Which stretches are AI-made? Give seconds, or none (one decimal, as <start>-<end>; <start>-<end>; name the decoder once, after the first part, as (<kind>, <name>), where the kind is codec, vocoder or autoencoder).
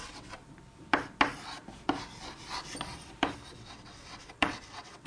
0.0-0.4 (vocoder, WaveNeXt); 3.5-5.1